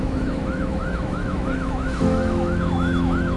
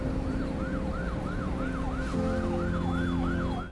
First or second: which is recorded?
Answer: second